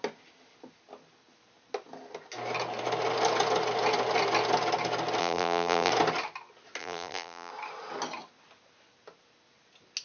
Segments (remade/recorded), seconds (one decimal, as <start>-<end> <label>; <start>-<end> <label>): 0.0-5.2 recorded; 5.2-5.9 remade; 5.9-6.8 recorded; 6.8-7.5 remade; 7.5-10.0 recorded